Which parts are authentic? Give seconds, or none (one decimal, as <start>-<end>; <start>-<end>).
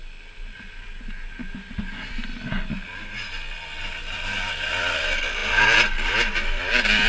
0.0-7.1